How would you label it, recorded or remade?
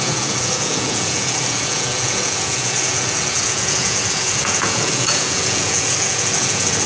remade